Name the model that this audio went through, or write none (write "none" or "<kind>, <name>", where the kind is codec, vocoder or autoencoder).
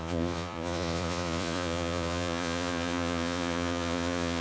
vocoder, Vocos